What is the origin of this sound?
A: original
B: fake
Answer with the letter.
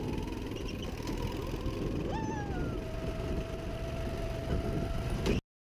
A